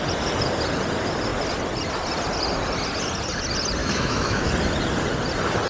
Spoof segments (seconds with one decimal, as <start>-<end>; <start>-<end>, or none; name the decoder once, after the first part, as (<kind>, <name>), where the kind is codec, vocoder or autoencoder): 3.8-4.5 (autoencoder, DAC-VAE)